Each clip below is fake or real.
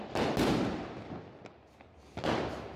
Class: real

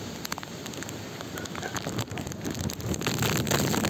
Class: real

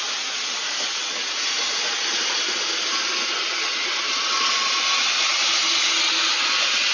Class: real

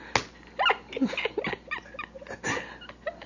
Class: real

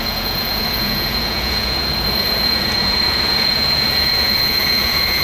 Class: fake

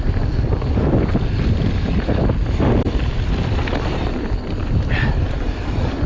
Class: real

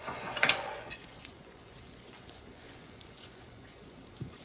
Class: fake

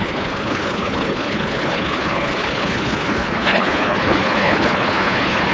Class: fake